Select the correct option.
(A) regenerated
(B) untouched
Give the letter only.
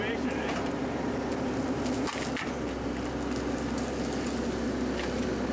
B